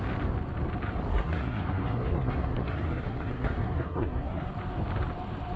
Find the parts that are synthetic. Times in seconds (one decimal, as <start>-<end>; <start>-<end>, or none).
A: 1.1-4.5